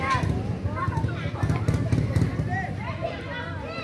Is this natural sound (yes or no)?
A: yes